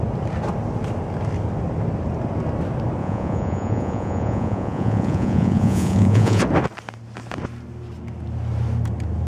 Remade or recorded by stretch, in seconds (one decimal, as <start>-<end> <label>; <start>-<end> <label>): 0.0-3.0 recorded; 3.0-6.4 remade; 6.4-9.3 recorded